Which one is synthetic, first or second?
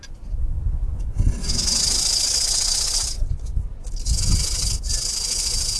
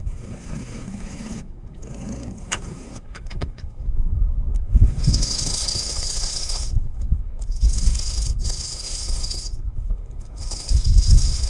second